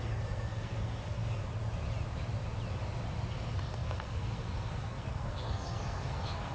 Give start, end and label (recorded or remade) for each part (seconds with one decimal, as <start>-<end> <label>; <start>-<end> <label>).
0.0-1.4 remade; 1.4-3.3 recorded; 3.3-6.5 remade